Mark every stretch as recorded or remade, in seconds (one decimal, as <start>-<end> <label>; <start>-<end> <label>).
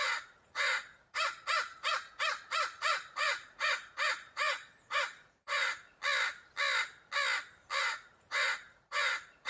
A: 0.0-6.0 remade; 6.0-7.8 recorded; 7.8-9.5 remade